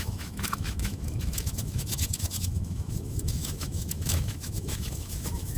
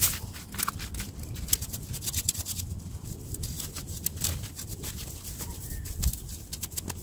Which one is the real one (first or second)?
second